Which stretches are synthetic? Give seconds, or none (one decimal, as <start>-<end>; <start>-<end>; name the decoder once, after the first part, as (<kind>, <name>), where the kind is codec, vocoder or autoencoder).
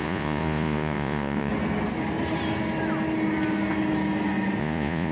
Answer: 0.0-1.5 (vocoder, Vocos); 4.6-5.1